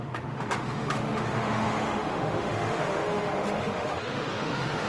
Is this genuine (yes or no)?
no